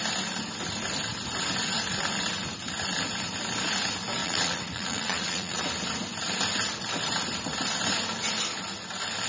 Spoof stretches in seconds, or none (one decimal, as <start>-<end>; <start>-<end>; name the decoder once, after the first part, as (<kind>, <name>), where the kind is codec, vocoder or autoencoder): 4.2-5.6 (vocoder, Vocos)